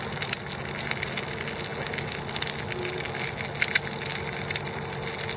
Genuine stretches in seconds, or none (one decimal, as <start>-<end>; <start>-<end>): 0.0-5.4